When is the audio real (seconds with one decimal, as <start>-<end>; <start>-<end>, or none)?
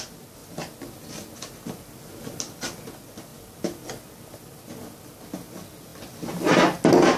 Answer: 0.4-2.6; 3.3-4.6